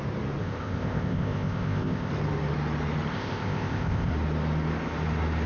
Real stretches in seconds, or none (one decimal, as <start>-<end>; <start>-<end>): 0.0-0.4; 2.1-3.1; 4.1-5.5